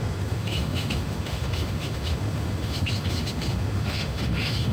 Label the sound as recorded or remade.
remade